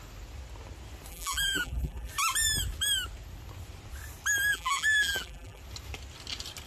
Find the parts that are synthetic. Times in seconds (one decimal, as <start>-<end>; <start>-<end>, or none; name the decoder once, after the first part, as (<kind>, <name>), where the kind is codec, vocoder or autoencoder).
1.1-2.1 (vocoder, BigVGAN v2); 4.5-5.6